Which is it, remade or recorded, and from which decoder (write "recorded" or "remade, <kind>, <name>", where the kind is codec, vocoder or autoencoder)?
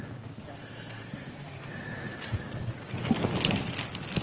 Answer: recorded